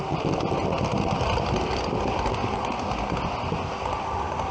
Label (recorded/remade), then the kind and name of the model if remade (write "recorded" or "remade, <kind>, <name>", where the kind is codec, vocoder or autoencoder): recorded